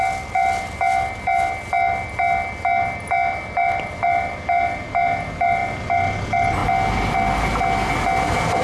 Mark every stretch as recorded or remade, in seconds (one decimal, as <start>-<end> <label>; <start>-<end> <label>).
0.0-8.6 recorded